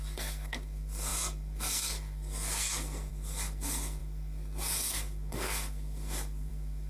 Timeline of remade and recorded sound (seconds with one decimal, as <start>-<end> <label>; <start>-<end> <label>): 0.0-6.9 remade